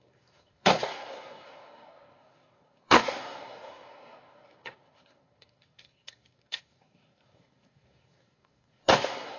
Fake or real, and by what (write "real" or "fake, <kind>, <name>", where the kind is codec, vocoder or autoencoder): fake, codec, SNAC